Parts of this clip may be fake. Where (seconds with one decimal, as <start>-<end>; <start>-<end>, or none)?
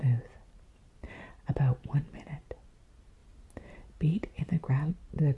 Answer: none